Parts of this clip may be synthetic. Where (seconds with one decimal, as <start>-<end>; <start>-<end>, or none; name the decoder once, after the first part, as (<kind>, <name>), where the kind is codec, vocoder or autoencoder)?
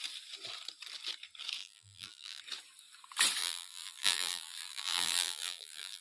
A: 1.6-2.4 (vocoder, BigVGAN v2); 3.4-6.0